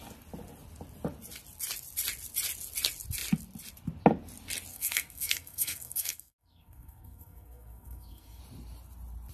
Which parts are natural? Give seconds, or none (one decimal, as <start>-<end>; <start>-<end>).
0.0-4.7; 8.4-9.3